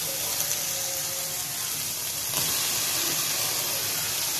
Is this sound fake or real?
real